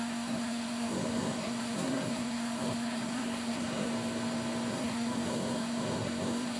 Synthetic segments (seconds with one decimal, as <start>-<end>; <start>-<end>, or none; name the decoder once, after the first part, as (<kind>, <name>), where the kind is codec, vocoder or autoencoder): 0.0-3.9 (codec, SNAC); 4.7-6.6